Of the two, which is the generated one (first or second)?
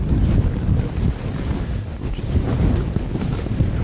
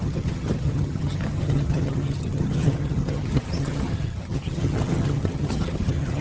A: second